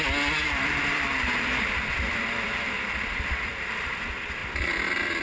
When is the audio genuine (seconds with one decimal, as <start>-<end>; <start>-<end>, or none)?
0.0-0.4; 3.5-5.2